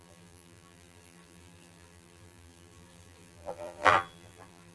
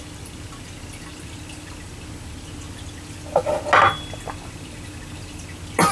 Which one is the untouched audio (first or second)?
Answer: second